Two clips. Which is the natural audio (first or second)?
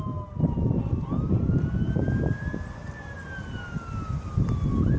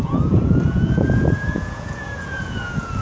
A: first